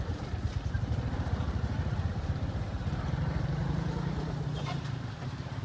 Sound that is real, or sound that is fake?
fake